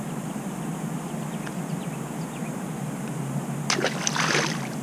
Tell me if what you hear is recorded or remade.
recorded